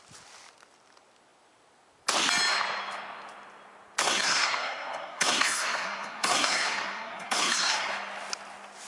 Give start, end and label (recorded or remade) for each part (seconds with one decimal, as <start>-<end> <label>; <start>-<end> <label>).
0.0-4.0 recorded; 4.0-7.9 remade; 7.9-8.9 recorded